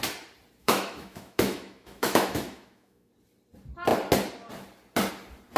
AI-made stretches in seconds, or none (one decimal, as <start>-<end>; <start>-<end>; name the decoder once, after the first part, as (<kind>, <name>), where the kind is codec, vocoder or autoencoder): 0.6-3.1 (autoencoder, DAC-VAE)